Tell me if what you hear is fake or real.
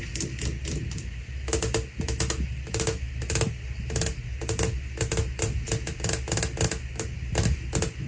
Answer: real